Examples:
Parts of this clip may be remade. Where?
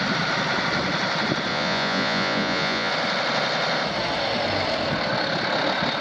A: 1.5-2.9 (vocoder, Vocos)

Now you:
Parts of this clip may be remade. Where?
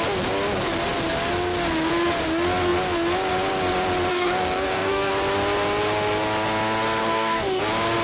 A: 4.1-5.1 (codec, DAC); 7.0-7.6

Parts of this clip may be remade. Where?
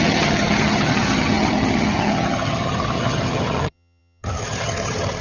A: 0.0-5.2 (vocoder, HiFi-GAN)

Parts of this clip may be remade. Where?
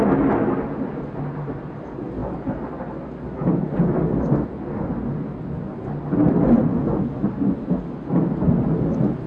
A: none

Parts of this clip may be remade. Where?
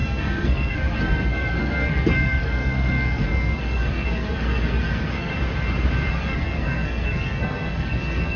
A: 0.0-5.3 (codec, SNAC); 6.1-8.4